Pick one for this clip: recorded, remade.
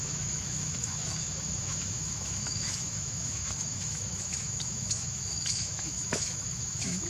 remade